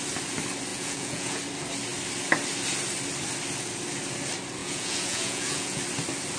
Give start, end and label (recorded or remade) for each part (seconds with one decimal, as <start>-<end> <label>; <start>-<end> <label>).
0.0-0.7 recorded; 0.7-1.4 remade; 1.4-4.6 recorded; 4.6-5.8 remade; 5.8-6.4 recorded